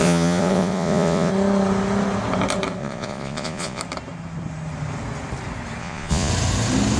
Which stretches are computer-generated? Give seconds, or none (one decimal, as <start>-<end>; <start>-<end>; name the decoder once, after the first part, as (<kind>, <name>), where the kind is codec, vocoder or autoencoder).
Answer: 0.0-1.3 (vocoder, Vocos); 2.8-3.8; 5.8-6.3